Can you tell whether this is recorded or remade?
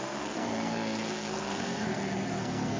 remade